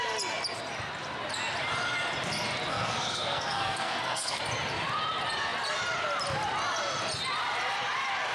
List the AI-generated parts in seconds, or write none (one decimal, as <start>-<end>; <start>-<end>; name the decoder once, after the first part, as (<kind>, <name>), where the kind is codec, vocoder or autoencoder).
2.7-4.4 (codec, SNAC)